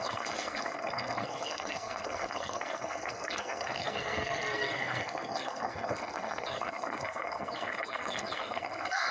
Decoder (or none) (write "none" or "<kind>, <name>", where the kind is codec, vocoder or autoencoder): codec, SNAC